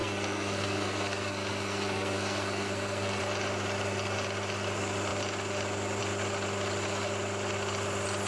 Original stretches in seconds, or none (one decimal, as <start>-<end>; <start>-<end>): 3.2-8.3